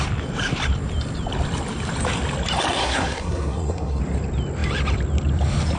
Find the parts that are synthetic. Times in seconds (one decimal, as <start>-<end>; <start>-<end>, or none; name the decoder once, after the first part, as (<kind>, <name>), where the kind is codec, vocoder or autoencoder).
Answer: 2.7-4.0 (codec, SNAC)